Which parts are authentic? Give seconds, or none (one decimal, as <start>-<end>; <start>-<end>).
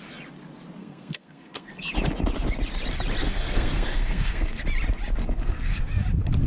0.0-0.8; 1.7-3.2; 4.6-5.2; 5.8-6.5